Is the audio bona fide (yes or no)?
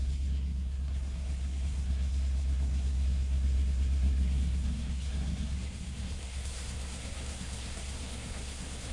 no